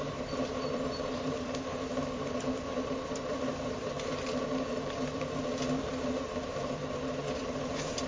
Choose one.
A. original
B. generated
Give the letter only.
B